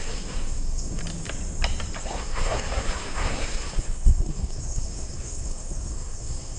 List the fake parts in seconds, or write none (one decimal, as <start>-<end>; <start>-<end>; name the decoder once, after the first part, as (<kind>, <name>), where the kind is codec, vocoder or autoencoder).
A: 0.0-1.0 (codec, SNAC); 2.0-6.6